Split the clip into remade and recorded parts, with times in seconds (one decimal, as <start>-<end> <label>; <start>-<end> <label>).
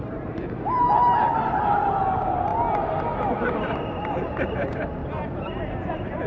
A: 0.0-2.5 remade; 2.5-3.2 recorded; 3.2-5.0 remade; 5.0-5.7 recorded; 5.7-6.3 remade